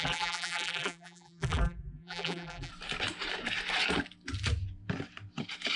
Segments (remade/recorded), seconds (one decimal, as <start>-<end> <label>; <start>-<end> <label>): 0.0-2.7 remade; 2.7-5.8 recorded